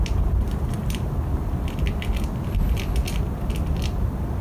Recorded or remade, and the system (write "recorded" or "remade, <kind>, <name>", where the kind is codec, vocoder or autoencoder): recorded